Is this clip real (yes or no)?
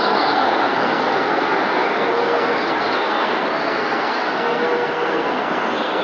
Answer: no